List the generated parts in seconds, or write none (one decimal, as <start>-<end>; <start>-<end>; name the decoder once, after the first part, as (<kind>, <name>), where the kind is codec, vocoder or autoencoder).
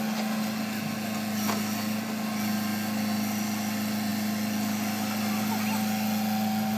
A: none